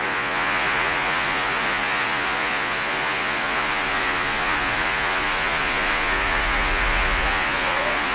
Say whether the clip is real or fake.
fake